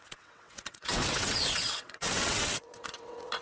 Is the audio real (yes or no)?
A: no